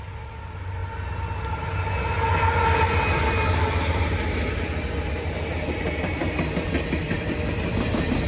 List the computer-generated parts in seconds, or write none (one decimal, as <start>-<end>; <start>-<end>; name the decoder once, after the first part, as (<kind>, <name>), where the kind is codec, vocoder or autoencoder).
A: none